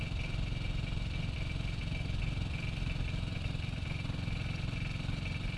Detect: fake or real real